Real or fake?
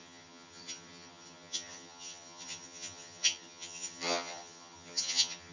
fake